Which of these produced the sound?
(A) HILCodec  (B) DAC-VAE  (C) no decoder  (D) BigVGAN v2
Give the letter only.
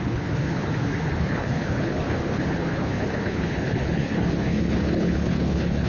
A